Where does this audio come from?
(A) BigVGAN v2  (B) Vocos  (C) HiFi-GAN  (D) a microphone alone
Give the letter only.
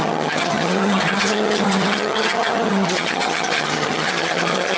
C